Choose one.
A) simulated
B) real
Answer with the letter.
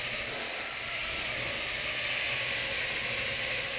B